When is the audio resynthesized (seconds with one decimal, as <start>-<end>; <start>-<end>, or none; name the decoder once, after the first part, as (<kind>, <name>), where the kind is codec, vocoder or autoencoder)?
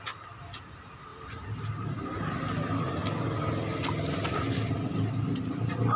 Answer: 1.1-1.6 (vocoder, BigVGAN v2)